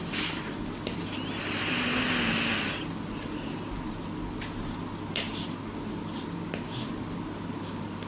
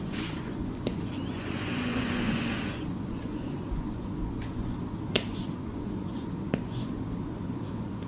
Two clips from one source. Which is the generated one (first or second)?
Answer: second